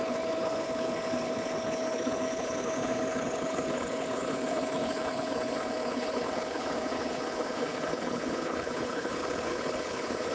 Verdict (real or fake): fake